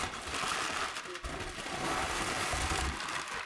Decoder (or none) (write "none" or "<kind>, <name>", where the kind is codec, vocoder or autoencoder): none